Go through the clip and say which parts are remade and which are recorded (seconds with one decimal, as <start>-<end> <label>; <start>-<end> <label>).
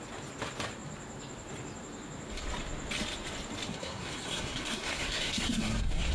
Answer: 0.0-3.7 recorded; 3.7-6.1 remade